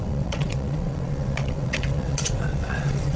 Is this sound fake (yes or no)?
yes